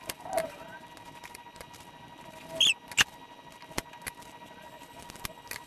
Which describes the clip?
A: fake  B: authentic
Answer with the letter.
B